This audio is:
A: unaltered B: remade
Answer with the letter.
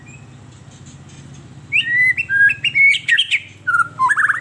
A